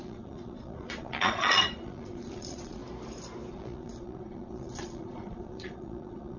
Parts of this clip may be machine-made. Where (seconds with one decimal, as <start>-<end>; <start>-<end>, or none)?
0.0-2.8; 3.5-6.4

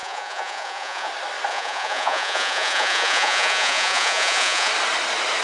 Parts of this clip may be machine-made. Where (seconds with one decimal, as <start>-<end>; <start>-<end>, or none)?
0.0-1.1; 1.5-4.7